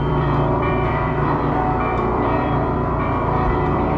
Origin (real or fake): fake